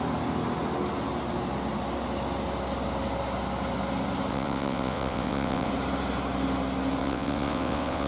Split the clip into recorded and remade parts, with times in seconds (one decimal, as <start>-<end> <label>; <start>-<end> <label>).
0.0-4.3 recorded; 4.3-5.7 remade; 5.7-7.0 recorded; 7.0-8.1 remade